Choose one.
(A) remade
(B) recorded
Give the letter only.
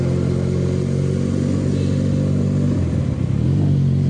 B